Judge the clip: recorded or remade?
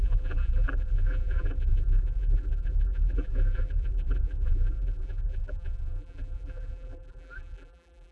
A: remade